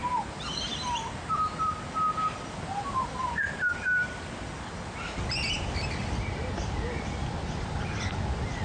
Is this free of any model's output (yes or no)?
yes